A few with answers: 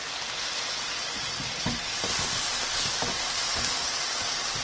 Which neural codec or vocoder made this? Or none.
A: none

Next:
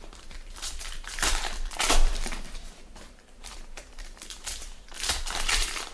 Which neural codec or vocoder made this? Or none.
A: vocoder, BigVGAN v2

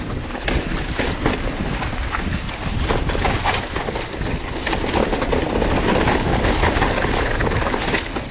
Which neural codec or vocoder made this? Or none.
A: none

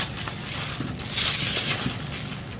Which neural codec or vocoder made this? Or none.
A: none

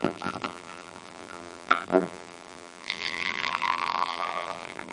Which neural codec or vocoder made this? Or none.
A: vocoder, BigVGAN v2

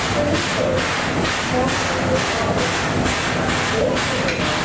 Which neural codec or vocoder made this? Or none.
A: none